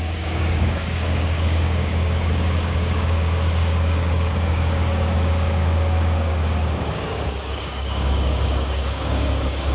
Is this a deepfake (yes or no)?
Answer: yes